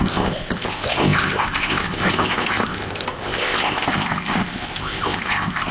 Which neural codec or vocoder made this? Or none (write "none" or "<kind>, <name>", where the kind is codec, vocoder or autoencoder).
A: codec, ZipCodec